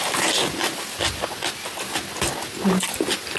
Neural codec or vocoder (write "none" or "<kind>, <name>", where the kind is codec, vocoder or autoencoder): none